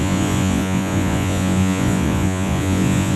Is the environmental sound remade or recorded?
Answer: remade